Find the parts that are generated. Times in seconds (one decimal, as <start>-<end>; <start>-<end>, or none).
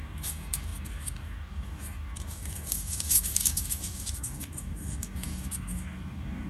0.0-6.5